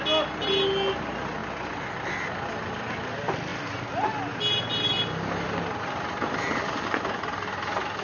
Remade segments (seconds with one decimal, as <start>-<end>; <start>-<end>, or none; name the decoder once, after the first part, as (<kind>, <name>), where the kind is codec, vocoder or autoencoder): none